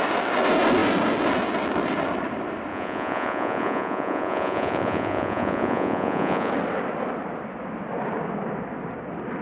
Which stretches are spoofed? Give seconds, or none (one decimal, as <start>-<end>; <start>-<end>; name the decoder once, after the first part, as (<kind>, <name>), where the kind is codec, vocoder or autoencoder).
2.7-6.5 (vocoder, Vocos)